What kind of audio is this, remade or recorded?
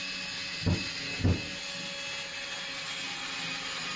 recorded